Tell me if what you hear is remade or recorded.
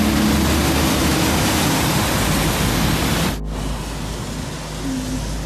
recorded